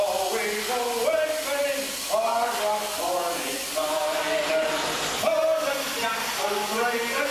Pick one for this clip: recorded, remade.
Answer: recorded